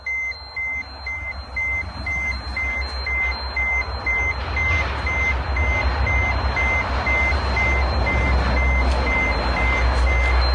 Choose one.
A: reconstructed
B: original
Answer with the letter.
B